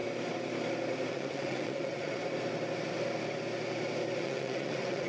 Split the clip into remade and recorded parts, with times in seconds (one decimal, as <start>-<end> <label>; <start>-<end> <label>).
0.0-1.1 recorded; 1.1-2.2 remade; 2.2-4.2 recorded; 4.2-5.1 remade